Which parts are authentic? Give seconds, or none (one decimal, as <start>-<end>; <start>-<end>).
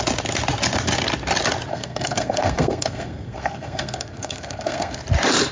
0.0-1.7; 5.0-5.5